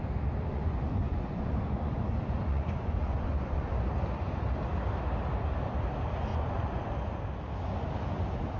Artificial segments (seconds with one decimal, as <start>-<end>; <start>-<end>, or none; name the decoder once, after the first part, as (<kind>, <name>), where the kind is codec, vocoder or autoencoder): 0.5-3.7 (vocoder, Vocos); 6.3-6.8